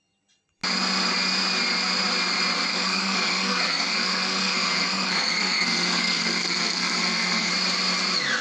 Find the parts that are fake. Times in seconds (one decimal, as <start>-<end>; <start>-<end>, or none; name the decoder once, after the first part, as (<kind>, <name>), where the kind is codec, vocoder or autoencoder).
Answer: 2.7-7.5 (codec, SNAC)